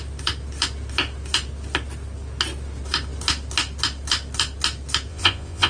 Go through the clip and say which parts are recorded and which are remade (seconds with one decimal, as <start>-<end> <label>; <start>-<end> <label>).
0.0-5.1 recorded; 5.1-5.7 remade